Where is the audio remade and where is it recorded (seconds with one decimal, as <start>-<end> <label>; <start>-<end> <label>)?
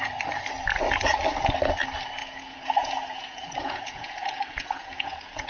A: 0.0-2.2 recorded; 2.2-5.5 remade